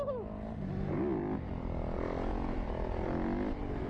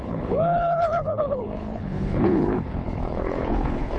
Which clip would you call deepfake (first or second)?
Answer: second